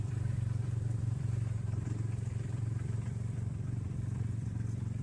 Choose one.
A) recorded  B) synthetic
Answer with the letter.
B